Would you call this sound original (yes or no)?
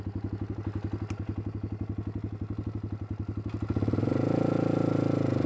yes